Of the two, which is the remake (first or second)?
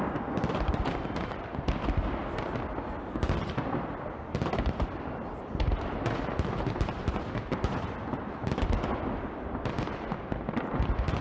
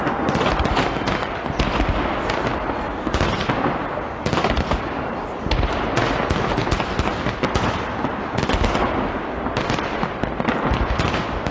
first